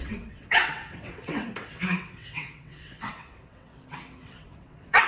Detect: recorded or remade remade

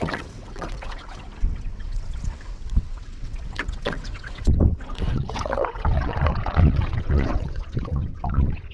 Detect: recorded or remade remade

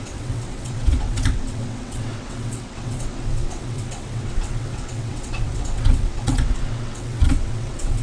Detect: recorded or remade remade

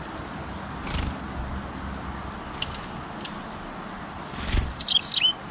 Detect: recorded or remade recorded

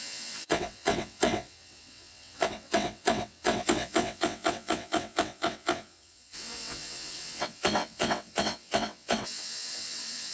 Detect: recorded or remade remade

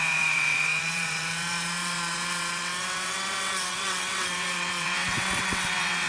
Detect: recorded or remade remade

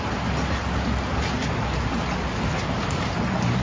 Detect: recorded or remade recorded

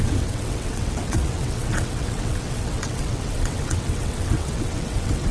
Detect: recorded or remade remade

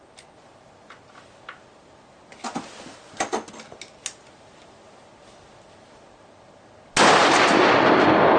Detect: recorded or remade recorded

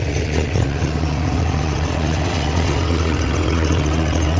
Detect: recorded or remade remade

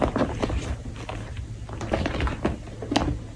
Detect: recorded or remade recorded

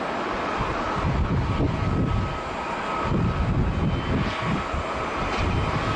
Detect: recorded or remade recorded